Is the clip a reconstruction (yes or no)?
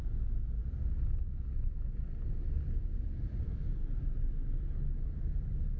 no